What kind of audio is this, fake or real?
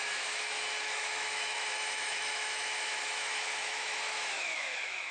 fake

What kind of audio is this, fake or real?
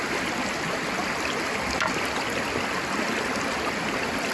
real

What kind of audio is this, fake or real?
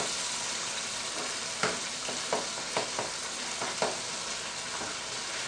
real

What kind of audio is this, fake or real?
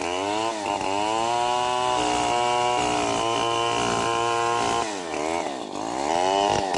real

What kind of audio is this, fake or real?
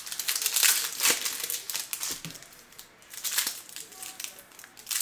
real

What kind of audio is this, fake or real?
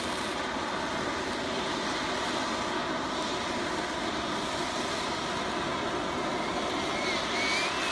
real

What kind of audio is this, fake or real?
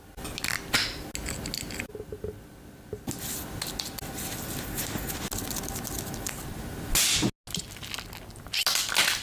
real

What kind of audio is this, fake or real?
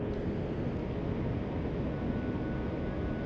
real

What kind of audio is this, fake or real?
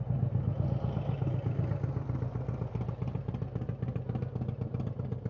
real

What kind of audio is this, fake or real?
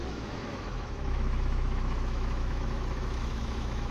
fake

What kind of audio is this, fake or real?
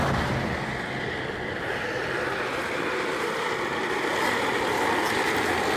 real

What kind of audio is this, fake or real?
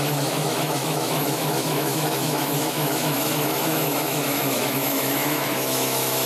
fake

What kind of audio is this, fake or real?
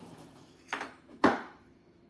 fake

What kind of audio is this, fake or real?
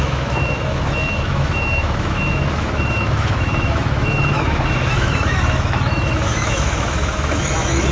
fake